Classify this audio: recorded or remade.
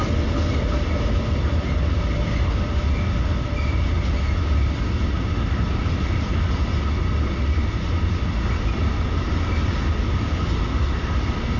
recorded